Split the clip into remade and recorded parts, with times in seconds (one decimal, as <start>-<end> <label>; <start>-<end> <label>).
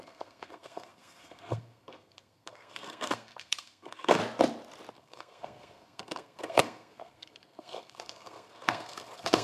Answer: 0.0-4.2 remade; 4.2-4.9 recorded; 4.9-9.4 remade